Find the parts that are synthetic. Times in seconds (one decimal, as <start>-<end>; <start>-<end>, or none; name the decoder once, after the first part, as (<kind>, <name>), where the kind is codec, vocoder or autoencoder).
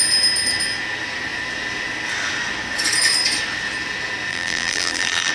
4.3-5.3 (vocoder, BigVGAN v2)